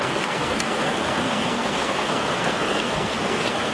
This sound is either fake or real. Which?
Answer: fake